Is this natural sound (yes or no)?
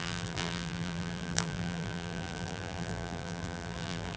no